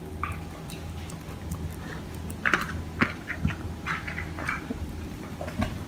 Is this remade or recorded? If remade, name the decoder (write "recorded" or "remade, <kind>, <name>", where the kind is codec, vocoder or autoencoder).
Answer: recorded